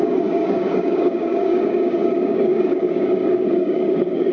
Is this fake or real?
fake